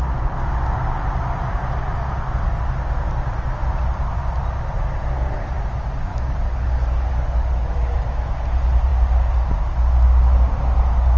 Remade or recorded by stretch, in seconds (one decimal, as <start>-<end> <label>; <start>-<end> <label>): 0.0-6.1 recorded; 6.1-8.0 remade; 8.0-11.2 recorded